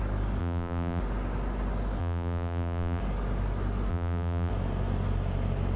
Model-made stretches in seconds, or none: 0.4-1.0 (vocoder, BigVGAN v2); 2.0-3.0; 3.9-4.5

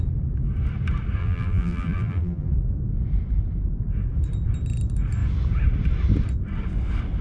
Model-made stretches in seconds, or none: 1.2-2.5 (vocoder, BigVGAN v2)

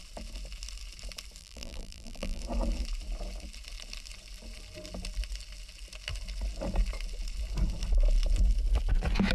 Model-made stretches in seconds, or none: 1.4-2.4 (vocoder, BigVGAN v2)

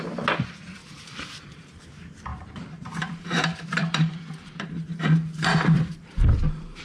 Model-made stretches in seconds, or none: 0.8-1.9 (vocoder, BigVGAN v2); 2.3-6.8

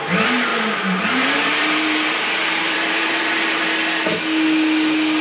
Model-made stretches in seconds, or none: 0.5-3.6 (vocoder, BigVGAN v2)

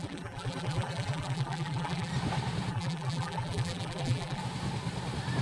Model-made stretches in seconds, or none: 0.0-2.1 (vocoder, BigVGAN v2); 2.7-4.4